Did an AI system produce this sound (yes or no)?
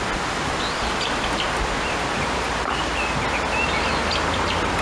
no